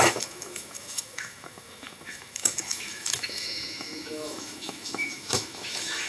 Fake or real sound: fake